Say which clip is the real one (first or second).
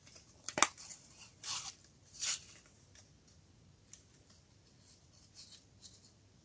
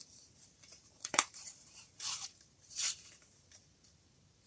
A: first